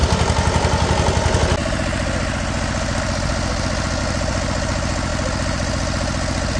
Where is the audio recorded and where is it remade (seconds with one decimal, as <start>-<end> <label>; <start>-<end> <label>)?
0.0-6.6 recorded